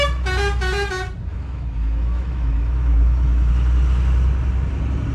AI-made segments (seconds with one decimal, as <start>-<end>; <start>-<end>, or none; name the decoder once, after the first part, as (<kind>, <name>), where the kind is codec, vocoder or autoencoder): 1.3-3.5 (autoencoder, DAC-VAE)